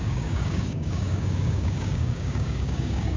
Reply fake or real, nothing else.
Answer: fake